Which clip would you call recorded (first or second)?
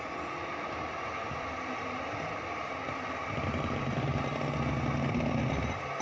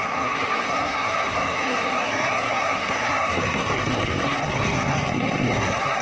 first